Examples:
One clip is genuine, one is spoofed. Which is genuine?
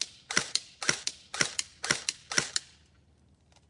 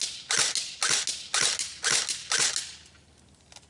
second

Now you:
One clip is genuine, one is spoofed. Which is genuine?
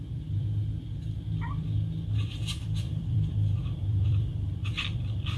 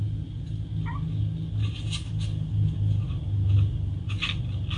second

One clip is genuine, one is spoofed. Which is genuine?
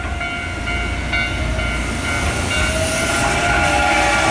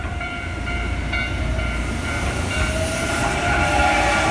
first